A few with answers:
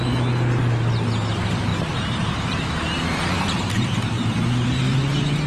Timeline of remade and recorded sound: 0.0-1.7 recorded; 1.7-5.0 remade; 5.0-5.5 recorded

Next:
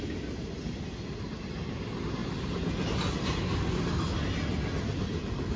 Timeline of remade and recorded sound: 0.0-5.6 recorded

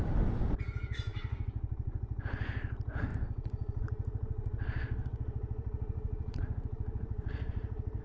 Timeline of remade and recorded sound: 0.0-1.1 recorded; 1.1-2.2 remade; 2.2-3.1 recorded; 3.1-8.0 remade

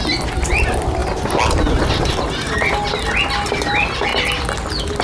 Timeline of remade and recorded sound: 0.0-5.0 recorded

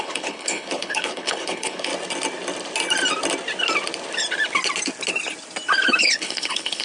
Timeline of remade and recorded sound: 0.0-1.9 remade; 1.9-6.0 recorded; 6.0-6.8 remade